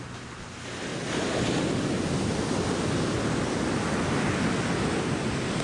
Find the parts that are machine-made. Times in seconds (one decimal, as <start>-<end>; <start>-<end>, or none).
none